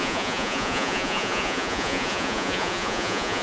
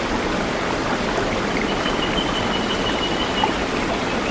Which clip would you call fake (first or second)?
first